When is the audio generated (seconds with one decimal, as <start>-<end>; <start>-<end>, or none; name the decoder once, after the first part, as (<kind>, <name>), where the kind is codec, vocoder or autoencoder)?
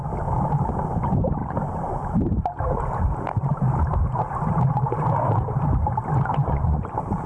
6.3-6.8 (vocoder, Vocos)